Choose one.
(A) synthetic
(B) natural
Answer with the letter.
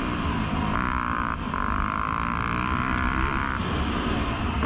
A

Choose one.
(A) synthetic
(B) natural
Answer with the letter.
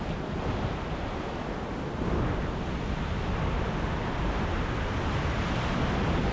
B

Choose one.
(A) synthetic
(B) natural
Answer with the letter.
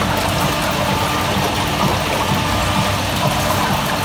B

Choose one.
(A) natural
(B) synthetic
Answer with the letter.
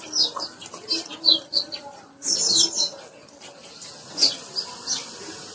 A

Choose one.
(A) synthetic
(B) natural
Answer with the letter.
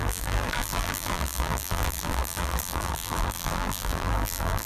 A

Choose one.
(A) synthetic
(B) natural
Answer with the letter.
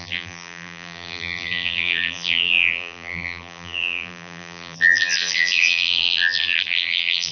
A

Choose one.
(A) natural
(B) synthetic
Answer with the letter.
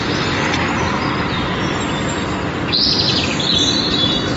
A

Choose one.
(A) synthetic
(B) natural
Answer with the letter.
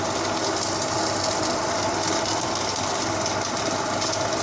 B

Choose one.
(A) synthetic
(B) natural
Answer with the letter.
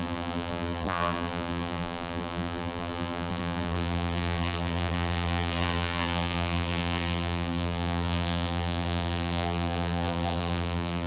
A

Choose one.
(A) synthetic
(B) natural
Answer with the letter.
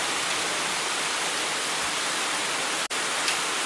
B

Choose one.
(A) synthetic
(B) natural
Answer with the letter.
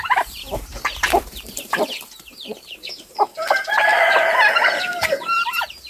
A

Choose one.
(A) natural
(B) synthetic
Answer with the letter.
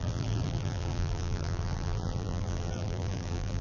B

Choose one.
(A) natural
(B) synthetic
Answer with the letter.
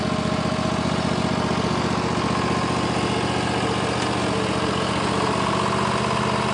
A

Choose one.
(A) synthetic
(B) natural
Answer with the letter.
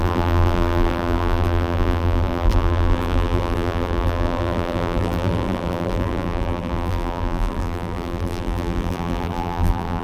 A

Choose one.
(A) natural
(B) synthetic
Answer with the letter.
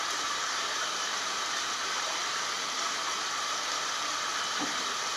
B